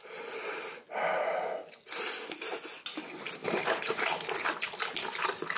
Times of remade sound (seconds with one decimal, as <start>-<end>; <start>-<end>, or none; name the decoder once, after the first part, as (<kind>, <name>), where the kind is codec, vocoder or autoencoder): none